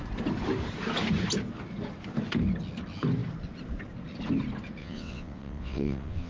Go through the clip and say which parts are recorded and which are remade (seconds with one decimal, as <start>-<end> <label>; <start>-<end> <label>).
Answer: 0.0-4.8 recorded; 4.8-6.3 remade